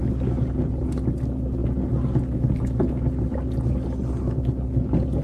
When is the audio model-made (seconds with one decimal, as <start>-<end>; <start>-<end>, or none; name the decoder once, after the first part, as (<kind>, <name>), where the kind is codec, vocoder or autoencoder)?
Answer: none